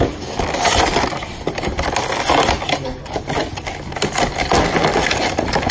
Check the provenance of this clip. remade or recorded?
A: recorded